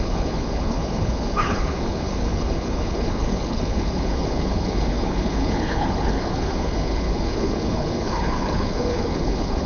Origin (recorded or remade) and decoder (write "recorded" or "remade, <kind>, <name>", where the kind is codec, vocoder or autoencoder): remade, codec, HILCodec